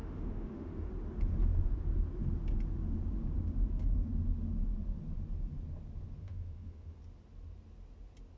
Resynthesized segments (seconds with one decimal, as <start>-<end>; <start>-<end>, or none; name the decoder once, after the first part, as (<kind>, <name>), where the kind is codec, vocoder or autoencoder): 0.0-0.9 (autoencoder, DAC-VAE); 6.2-7.0